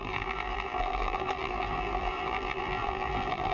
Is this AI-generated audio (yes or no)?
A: yes